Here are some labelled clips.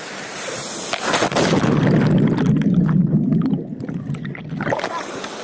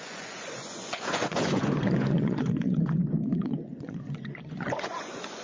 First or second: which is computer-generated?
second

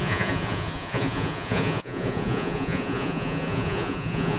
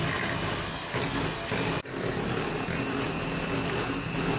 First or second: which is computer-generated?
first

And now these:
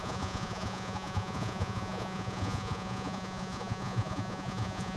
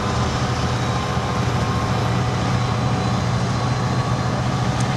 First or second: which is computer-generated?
first